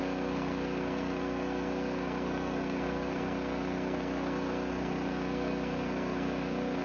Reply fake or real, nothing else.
fake